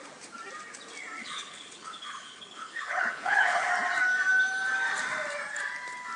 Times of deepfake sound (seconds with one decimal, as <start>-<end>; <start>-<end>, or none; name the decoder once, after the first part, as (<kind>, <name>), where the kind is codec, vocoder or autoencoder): 1.2-3.7 (codec, HILCodec)